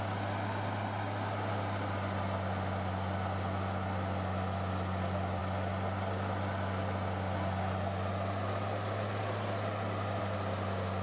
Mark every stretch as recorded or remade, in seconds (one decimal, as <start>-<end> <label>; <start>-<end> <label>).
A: 0.0-11.0 recorded